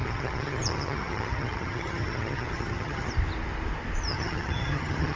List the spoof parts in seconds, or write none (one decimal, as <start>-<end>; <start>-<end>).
0.0-3.1; 4.1-5.2